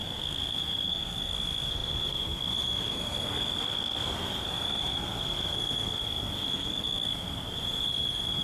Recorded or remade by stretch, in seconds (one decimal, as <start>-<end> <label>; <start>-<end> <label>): 0.0-8.4 remade